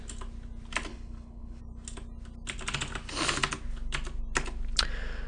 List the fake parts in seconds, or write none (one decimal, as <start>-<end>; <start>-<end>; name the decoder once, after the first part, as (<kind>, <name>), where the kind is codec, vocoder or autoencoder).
0.9-1.6 (codec, HILCodec)